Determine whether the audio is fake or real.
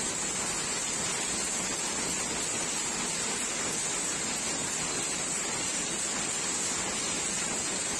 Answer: real